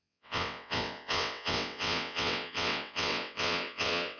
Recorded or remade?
remade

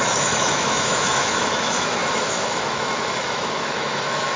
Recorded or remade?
remade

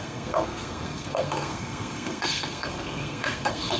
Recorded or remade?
remade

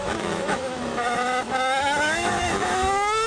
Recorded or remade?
remade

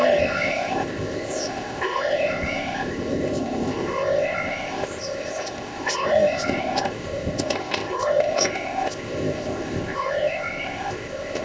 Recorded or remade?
remade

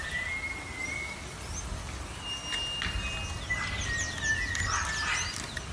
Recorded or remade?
recorded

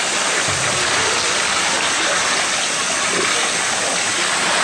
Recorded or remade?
recorded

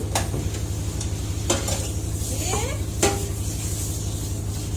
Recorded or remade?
recorded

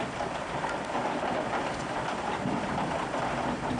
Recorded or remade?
remade